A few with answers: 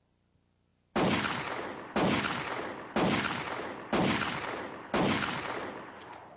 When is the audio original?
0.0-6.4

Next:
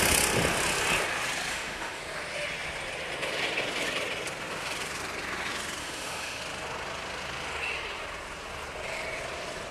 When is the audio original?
0.0-1.5; 2.0-5.8; 6.4-9.7